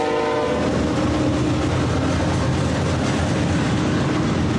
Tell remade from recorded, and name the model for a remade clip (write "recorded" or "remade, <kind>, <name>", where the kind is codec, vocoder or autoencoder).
recorded